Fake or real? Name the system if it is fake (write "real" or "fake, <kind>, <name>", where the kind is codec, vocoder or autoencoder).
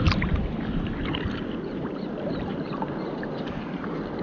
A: real